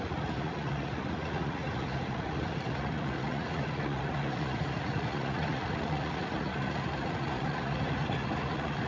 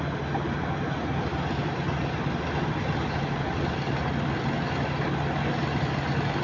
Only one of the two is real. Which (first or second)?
second